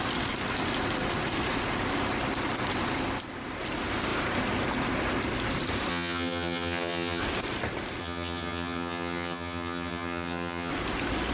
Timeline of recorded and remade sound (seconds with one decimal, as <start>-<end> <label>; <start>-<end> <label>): 0.0-5.9 recorded; 5.9-7.2 remade; 7.2-8.0 recorded; 8.0-10.7 remade; 10.7-11.3 recorded